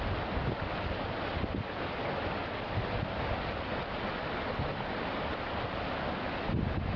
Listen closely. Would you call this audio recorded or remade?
recorded